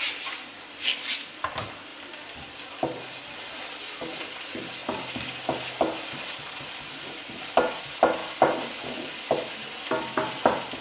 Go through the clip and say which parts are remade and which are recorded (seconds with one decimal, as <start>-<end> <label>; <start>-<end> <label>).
0.0-10.8 recorded